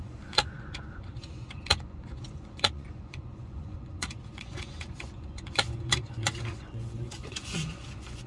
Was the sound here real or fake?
fake